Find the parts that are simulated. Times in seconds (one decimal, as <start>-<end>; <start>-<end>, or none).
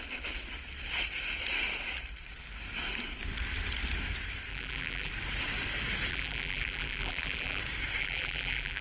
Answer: 4.5-5.1; 6.1-7.6; 8.0-8.8